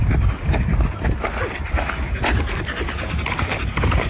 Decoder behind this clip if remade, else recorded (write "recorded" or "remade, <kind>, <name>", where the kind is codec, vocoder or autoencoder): recorded